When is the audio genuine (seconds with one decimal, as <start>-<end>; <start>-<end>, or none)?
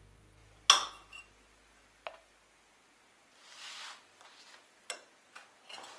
0.0-6.0